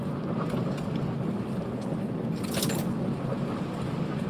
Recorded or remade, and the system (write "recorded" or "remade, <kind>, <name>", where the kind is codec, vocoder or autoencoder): recorded